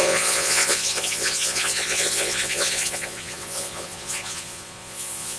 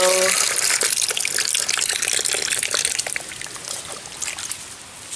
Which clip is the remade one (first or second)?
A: first